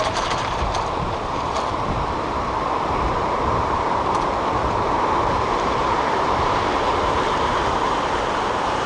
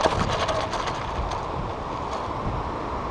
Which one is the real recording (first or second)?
second